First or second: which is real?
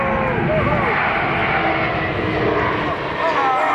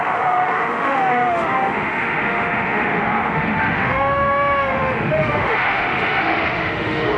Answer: first